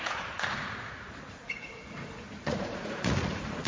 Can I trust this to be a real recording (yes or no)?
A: no